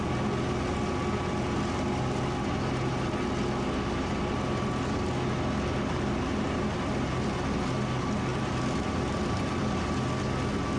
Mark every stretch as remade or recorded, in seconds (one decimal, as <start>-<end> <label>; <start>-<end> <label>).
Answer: 0.0-8.3 recorded; 8.3-9.9 remade; 9.9-10.8 recorded